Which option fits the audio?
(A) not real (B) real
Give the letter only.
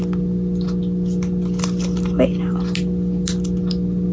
B